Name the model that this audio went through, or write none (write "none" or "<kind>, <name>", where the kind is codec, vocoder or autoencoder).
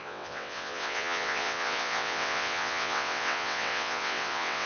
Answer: vocoder, WaveNeXt